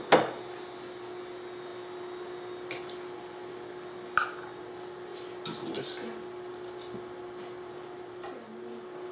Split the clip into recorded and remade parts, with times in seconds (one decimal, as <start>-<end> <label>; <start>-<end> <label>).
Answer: 0.0-9.1 recorded